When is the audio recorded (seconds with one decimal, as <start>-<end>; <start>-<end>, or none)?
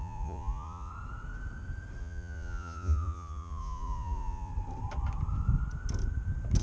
0.9-2.0; 4.5-6.6